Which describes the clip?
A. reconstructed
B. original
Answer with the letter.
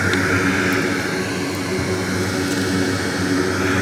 B